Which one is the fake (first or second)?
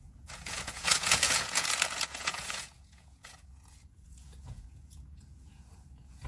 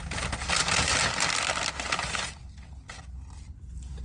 first